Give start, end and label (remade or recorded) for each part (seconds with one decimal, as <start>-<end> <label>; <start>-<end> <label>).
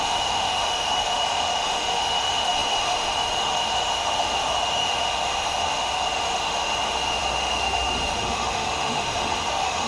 0.0-9.9 remade